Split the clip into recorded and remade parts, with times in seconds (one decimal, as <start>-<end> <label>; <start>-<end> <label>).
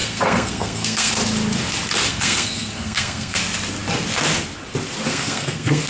0.0-1.1 remade; 1.1-2.1 recorded; 2.1-3.4 remade; 3.4-5.1 recorded; 5.1-5.9 remade